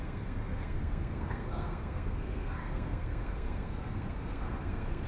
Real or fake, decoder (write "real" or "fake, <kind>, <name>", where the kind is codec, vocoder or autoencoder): fake, codec, SNAC